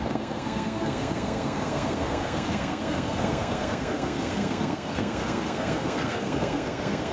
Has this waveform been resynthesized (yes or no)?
yes